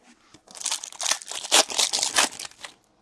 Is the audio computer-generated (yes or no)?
no